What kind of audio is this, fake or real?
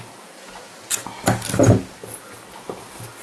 real